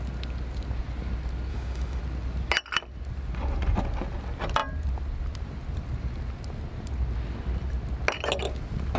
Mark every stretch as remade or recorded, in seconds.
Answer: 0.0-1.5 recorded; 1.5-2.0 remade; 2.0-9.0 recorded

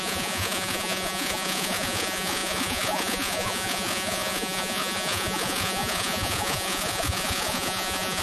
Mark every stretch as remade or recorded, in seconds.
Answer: 0.0-8.2 remade

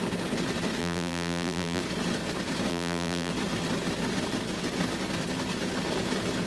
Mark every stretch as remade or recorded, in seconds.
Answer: 0.0-0.8 recorded; 0.8-1.8 remade; 1.8-2.7 recorded; 2.7-3.3 remade; 3.3-6.5 recorded

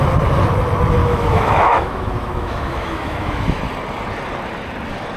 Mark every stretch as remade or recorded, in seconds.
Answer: 0.0-1.0 recorded; 1.0-3.6 remade; 3.6-5.2 recorded

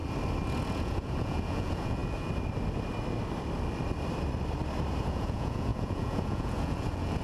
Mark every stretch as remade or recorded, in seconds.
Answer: 0.0-0.7 recorded; 0.7-2.0 remade; 2.0-5.0 recorded; 5.0-7.2 remade

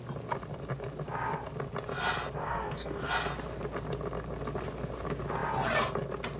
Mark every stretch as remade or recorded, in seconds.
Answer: 0.0-2.4 recorded; 2.4-3.1 remade; 3.1-6.4 recorded